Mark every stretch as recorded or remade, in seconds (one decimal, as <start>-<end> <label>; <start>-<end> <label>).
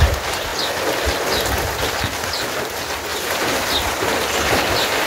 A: 0.0-3.1 recorded; 3.1-4.1 remade; 4.1-5.1 recorded